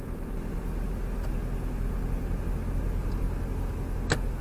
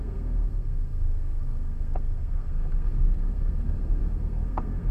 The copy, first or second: second